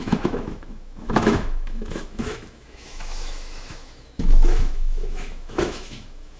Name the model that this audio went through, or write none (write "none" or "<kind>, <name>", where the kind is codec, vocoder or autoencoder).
autoencoder, DAC-VAE